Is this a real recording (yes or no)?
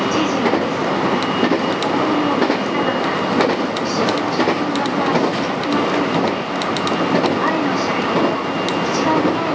yes